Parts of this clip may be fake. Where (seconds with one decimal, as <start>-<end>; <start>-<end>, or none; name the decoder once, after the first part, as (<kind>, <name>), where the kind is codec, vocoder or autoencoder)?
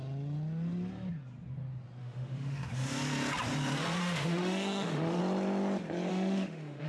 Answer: 2.0-2.7 (autoencoder, DAC-VAE); 4.0-5.2; 6.1-6.9